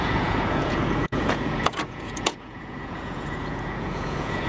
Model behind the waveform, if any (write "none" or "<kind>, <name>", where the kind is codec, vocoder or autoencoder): vocoder, Vocos